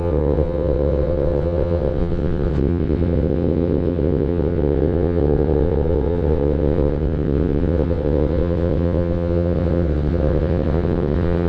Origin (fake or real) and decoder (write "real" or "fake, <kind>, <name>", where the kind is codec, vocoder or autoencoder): fake, vocoder, WaveNeXt